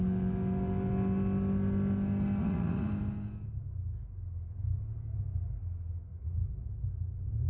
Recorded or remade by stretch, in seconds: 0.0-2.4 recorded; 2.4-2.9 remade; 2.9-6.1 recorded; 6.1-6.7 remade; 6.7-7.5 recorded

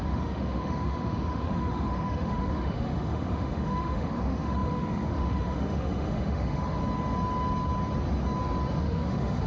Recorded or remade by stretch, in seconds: 0.0-6.8 remade; 6.8-8.8 recorded; 8.8-9.5 remade

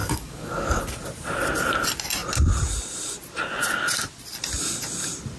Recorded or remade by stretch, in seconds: 0.0-0.8 remade; 0.8-5.4 recorded

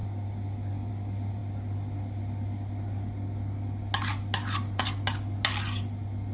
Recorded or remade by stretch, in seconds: 0.0-6.3 recorded

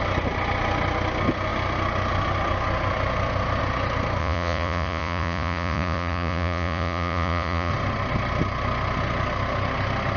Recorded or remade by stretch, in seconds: 0.0-4.2 recorded; 4.2-7.7 remade; 7.7-10.2 recorded